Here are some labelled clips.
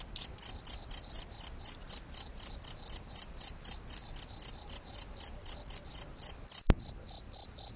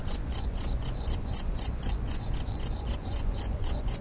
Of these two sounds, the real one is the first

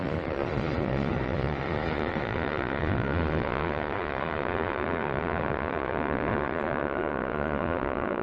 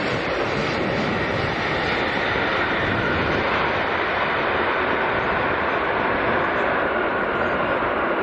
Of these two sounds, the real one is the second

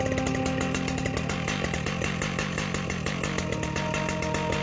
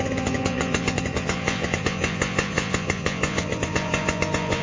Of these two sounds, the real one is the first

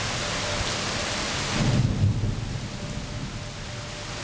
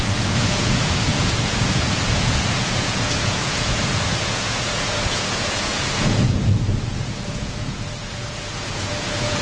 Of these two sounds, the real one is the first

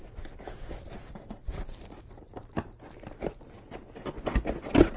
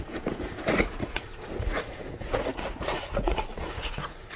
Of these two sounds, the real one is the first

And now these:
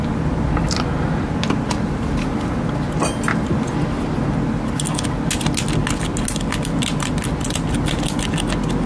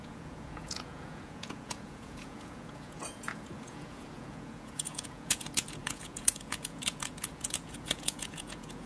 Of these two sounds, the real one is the first